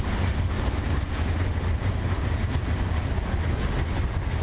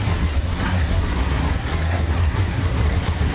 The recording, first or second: first